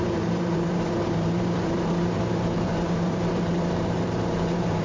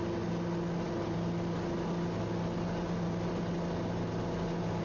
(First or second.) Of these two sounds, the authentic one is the second